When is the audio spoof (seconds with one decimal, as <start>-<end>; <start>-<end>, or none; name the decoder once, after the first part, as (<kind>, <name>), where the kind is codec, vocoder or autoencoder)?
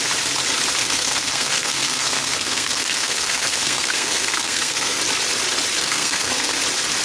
0.8-5.0 (codec, SNAC); 5.8-6.6